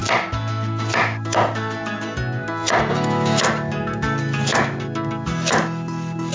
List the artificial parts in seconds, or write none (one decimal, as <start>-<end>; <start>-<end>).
2.9-3.4